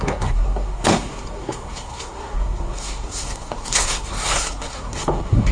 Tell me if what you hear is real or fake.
fake